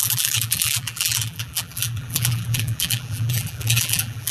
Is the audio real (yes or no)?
no